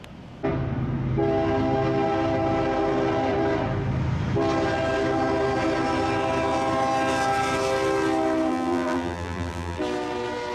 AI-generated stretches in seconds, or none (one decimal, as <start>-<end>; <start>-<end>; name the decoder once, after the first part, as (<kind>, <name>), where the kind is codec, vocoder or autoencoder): 8.5-9.8 (vocoder, BigVGAN v2)

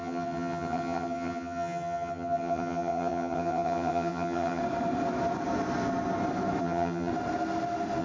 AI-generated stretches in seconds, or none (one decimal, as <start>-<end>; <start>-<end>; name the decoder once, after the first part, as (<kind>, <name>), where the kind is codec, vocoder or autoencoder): 0.0-4.6 (vocoder, HiFi-GAN); 6.6-7.1